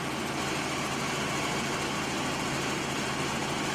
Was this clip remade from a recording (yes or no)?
no